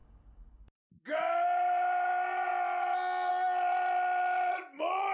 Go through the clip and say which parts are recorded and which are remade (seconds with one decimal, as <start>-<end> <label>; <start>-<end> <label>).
0.0-5.1 recorded